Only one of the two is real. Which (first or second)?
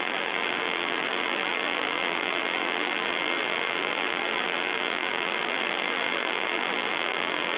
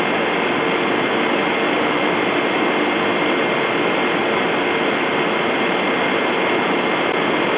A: second